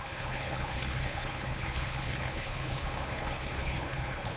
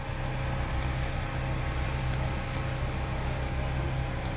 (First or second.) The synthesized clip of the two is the first